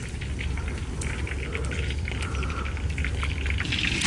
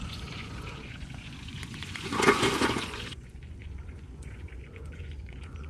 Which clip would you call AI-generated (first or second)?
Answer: second